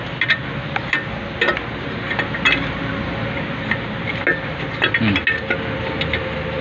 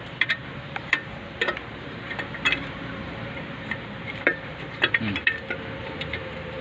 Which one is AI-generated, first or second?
second